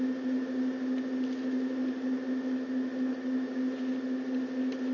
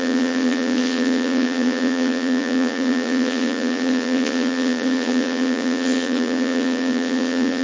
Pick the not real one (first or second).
second